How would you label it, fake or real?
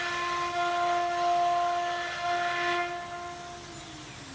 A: real